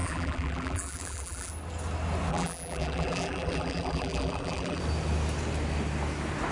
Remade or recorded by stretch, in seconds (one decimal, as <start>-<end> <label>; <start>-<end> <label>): 0.0-1.5 remade; 1.5-2.3 recorded; 2.3-4.8 remade; 4.8-6.5 recorded